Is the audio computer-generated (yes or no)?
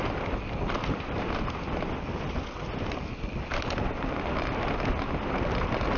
no